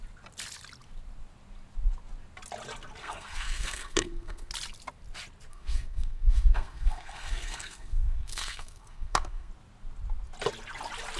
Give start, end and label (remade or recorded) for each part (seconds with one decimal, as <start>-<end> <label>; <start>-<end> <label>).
0.0-3.0 recorded; 3.0-4.5 remade; 4.5-5.5 recorded; 5.5-9.5 remade; 9.5-11.2 recorded